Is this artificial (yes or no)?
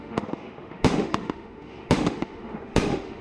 yes